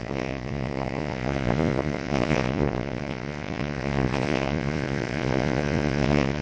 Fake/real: fake